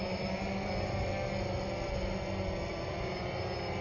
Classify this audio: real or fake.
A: real